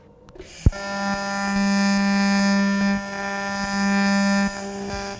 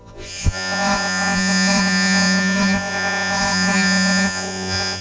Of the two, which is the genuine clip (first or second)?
first